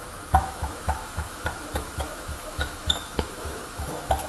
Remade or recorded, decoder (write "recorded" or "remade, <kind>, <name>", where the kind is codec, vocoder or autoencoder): remade, autoencoder, DAC-VAE